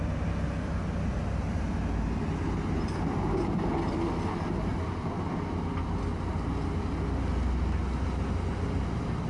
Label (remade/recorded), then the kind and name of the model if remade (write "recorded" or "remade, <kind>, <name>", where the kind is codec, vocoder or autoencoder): recorded